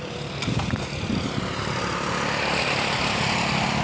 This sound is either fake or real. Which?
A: fake